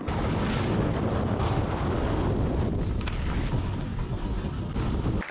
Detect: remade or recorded remade